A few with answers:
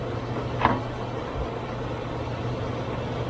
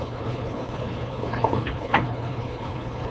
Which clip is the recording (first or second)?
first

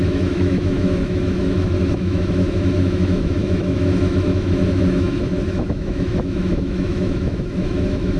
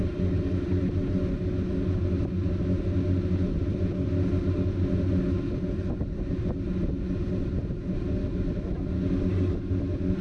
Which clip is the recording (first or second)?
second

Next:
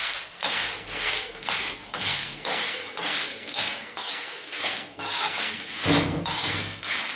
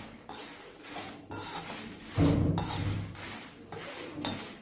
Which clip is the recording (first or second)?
second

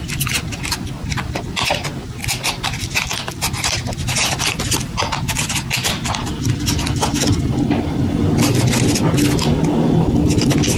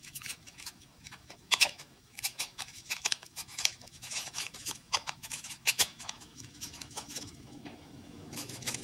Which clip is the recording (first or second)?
first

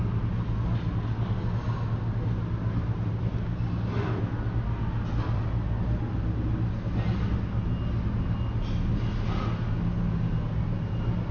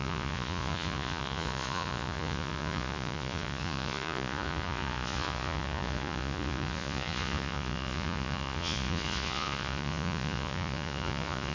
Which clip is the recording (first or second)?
first